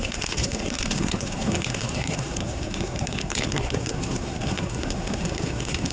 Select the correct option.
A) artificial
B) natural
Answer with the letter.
A